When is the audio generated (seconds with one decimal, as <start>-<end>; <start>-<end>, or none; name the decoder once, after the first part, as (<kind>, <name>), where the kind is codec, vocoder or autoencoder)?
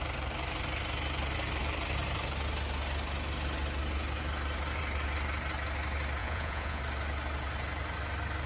6.2-6.8 (vocoder, Vocos)